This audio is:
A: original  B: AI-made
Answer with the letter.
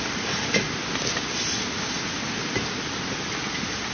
A